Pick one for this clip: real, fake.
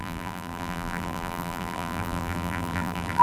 fake